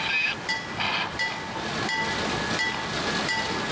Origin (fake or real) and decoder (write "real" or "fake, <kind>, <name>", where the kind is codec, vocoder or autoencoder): real